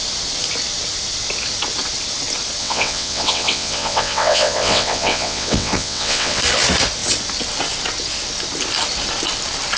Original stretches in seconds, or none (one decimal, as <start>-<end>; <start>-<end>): 0.0-2.6; 6.4-9.8